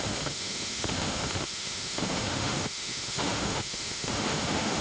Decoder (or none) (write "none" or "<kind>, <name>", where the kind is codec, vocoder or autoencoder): autoencoder, DAC-VAE